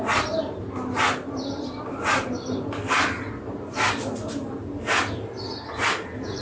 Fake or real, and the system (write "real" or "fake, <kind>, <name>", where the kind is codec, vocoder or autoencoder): real